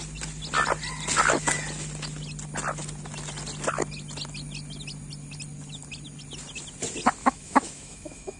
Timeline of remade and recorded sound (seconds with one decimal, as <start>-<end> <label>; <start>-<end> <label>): 0.0-7.2 recorded; 7.2-8.4 remade